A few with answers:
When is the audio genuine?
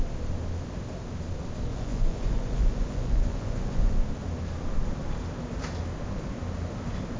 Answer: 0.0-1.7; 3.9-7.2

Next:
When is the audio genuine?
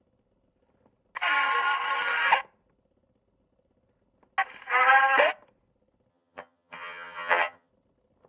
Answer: 0.0-6.1; 7.7-8.3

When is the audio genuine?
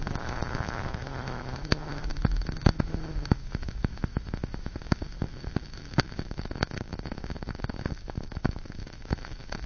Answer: none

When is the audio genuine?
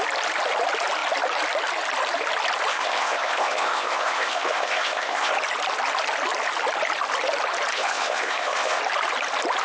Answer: 0.0-2.7; 5.3-7.7; 8.8-9.6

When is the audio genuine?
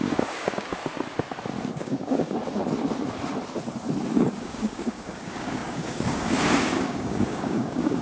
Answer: 0.8-1.7; 2.4-4.2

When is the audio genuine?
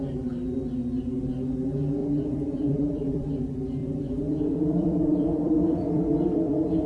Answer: 0.0-2.0; 3.4-3.8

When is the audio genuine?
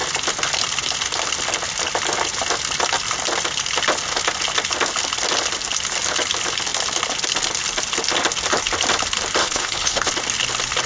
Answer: 0.0-9.4; 10.1-10.9